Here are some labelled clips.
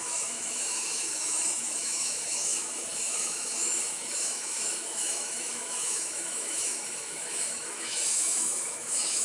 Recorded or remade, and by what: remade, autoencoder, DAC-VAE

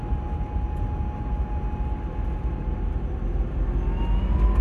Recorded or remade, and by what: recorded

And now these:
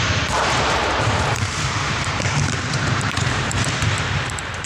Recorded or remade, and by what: remade, vocoder, BigVGAN v2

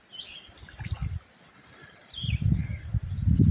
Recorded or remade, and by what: recorded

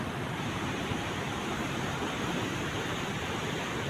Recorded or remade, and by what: remade, vocoder, BigVGAN v2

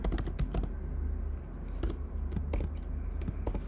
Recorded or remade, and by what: recorded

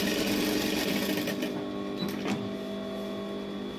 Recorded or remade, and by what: recorded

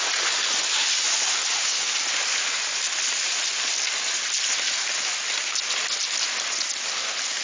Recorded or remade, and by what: recorded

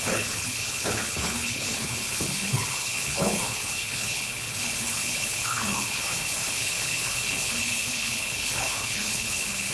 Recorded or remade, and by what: remade, codec, HILCodec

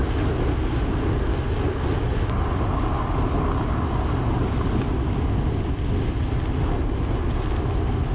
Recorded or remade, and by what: recorded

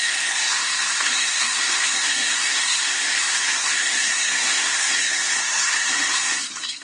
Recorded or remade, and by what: remade, codec, SNAC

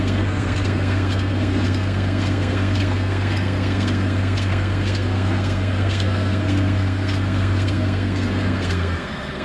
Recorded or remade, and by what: remade, codec, SNAC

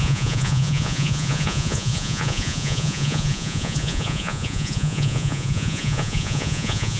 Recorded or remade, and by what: remade, vocoder, Vocos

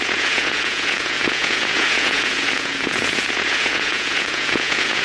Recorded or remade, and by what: remade, vocoder, Vocos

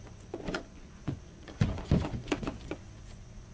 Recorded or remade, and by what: remade, vocoder, Vocos